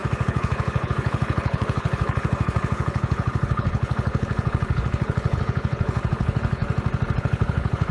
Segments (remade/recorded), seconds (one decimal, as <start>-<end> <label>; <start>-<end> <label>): 0.0-6.6 remade; 6.6-7.2 recorded; 7.2-7.9 remade